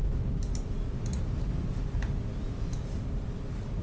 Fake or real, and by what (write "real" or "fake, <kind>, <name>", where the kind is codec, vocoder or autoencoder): real